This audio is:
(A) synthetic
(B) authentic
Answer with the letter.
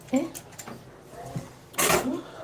B